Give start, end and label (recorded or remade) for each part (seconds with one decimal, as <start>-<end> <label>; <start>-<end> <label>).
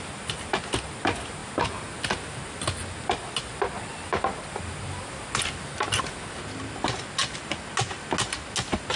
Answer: 0.0-9.0 recorded